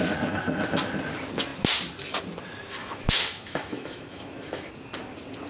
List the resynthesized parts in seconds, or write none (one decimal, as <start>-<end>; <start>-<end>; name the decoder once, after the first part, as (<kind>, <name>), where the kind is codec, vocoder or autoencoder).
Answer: 2.8-4.7 (autoencoder, DAC-VAE)